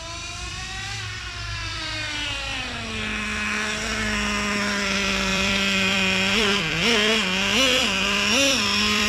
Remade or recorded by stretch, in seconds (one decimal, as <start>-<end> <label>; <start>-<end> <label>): 0.0-0.5 recorded; 0.5-2.6 remade; 2.6-5.3 recorded; 5.3-6.6 remade; 6.6-7.8 recorded; 7.8-9.1 remade